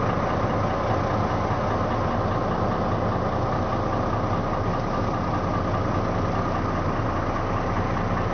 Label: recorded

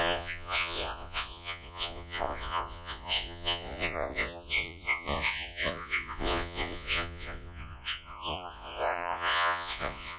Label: remade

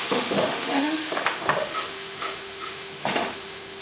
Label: remade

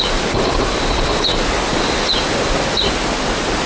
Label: recorded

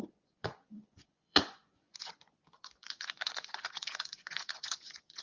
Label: remade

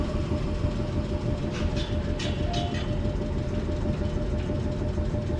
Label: recorded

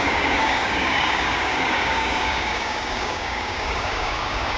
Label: remade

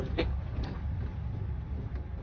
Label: remade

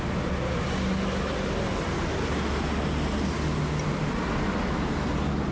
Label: recorded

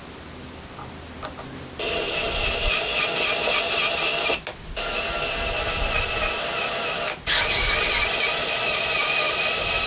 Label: recorded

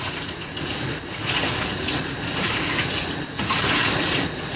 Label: remade